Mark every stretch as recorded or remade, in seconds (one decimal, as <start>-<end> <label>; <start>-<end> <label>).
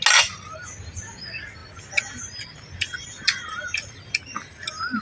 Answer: 0.0-5.0 recorded